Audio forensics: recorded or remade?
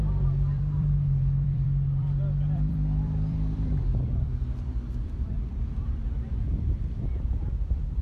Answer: remade